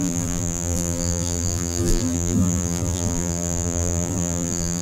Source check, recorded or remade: remade